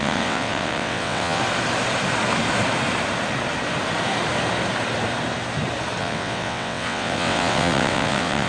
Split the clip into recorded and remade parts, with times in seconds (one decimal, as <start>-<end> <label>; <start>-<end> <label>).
0.0-1.4 remade; 1.4-6.0 recorded; 6.0-8.5 remade